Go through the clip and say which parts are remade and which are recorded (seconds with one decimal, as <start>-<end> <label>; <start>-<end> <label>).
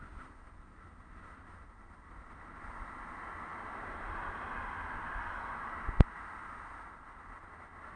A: 0.0-8.0 recorded